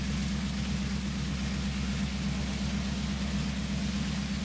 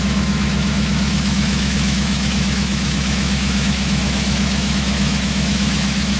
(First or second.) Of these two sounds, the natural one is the first